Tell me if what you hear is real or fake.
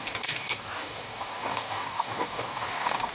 fake